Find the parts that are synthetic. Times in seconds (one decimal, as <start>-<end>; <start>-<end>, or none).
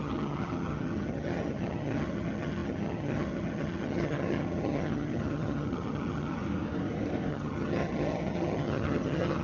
0.0-6.4; 7.3-9.4